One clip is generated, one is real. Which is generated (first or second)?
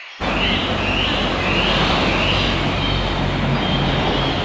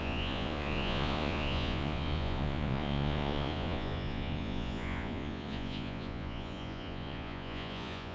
second